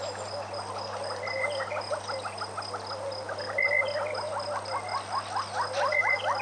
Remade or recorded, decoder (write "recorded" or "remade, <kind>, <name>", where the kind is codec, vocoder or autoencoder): recorded